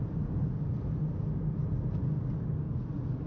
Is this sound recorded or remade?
recorded